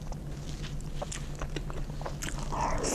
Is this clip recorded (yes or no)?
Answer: yes